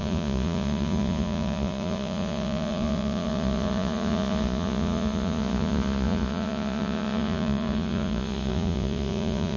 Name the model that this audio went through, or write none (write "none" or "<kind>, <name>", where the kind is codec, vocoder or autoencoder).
vocoder, Vocos